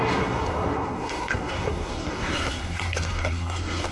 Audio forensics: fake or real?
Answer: fake